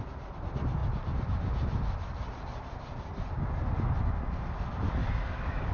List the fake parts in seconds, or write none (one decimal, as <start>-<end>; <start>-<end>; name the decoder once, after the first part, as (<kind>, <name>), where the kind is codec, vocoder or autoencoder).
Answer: none